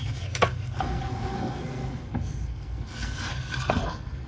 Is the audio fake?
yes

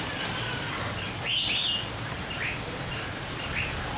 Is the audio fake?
no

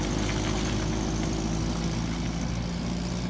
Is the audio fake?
no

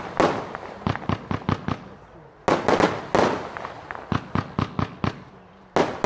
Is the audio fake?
no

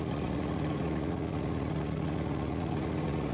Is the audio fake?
yes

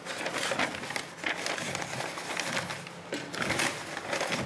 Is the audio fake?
no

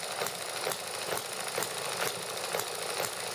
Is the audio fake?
no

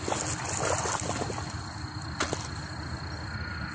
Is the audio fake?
no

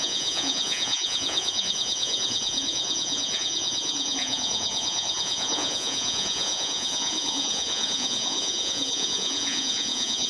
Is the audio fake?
yes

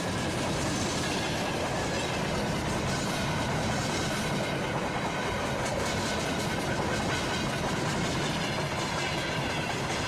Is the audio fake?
no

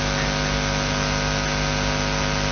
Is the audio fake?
no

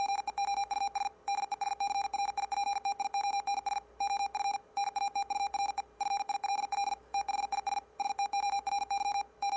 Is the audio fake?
yes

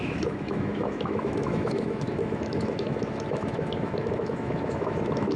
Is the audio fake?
yes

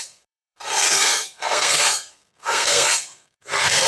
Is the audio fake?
yes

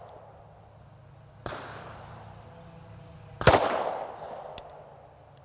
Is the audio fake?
no